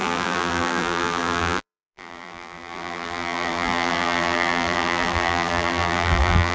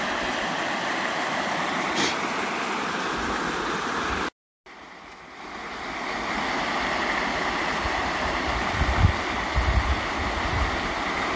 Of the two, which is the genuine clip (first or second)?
second